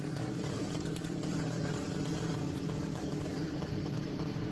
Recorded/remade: remade